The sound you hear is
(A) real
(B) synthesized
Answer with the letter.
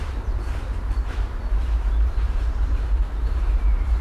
B